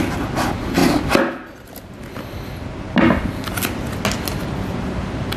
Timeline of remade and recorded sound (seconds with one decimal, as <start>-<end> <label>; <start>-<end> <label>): 0.0-5.4 recorded